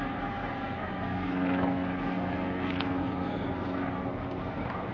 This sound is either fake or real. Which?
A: fake